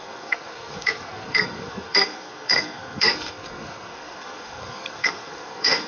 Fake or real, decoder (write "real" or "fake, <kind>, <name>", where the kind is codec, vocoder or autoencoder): fake, codec, SNAC